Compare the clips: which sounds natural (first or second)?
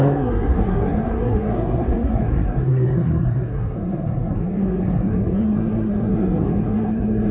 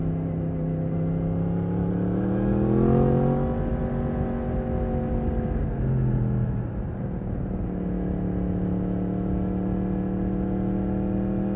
second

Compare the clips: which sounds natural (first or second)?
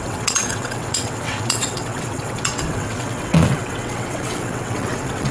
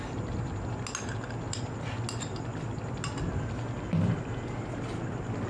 second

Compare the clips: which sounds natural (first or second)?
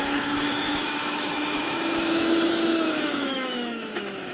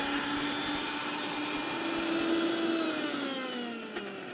second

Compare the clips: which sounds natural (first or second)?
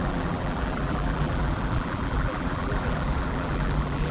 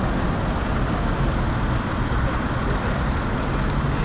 second